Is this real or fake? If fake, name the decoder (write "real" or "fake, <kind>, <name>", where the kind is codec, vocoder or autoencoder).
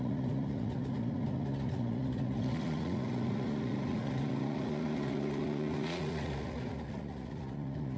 fake, vocoder, Vocos